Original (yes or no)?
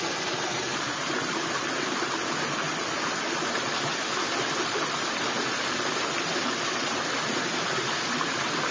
yes